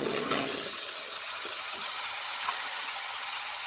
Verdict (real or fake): fake